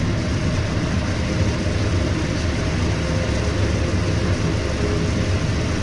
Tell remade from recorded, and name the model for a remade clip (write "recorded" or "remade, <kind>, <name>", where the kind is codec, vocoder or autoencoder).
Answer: recorded